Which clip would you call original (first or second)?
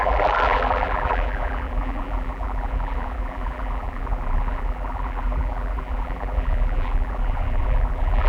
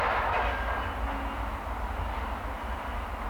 second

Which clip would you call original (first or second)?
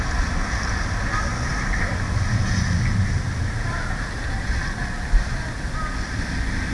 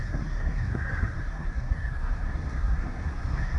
first